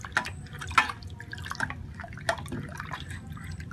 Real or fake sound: real